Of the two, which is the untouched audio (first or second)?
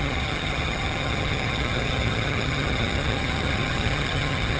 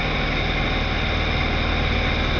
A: second